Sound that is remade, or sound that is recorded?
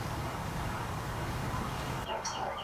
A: remade